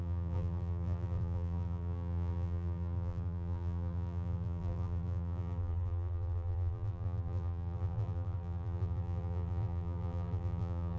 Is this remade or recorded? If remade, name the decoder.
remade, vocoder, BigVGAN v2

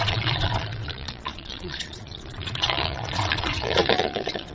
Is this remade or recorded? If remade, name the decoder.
remade, vocoder, Vocos